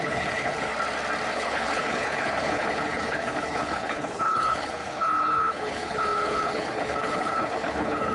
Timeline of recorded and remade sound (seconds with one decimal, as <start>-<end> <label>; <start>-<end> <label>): 0.0-0.7 remade; 0.7-1.3 recorded; 1.3-8.1 remade